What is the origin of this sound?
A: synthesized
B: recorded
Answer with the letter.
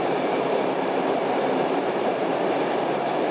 A